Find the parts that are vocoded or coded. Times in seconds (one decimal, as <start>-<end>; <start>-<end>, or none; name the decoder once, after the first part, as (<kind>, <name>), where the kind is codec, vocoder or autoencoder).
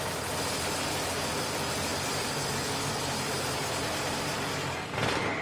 none